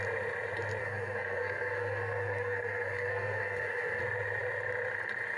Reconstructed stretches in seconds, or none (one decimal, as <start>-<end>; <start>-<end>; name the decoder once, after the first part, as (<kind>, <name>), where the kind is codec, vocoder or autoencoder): 0.8-4.0 (codec, SNAC)